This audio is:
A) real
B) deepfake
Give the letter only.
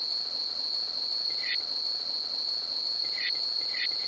A